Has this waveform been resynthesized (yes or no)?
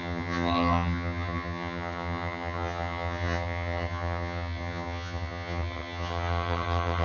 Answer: yes